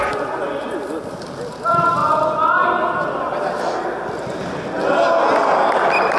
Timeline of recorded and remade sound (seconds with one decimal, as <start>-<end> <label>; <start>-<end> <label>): 0.0-0.9 remade; 0.9-6.2 recorded